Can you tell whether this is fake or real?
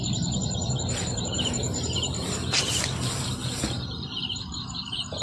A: fake